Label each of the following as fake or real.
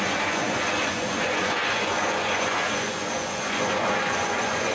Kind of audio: fake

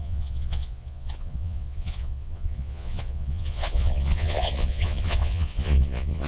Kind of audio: fake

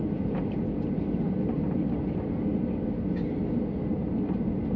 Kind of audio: real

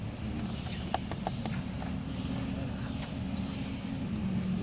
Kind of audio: real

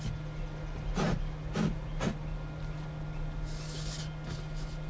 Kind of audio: real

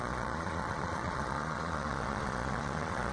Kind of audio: fake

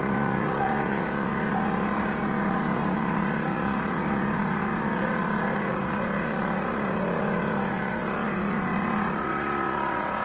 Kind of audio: fake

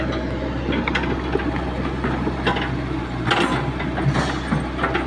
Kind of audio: real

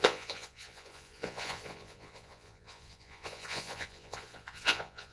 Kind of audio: fake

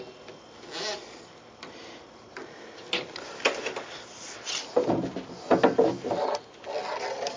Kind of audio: real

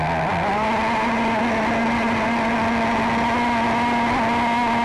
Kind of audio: real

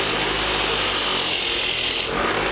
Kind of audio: real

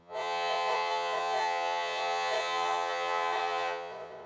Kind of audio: fake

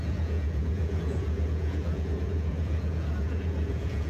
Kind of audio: fake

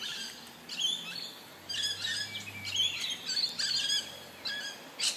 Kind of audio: real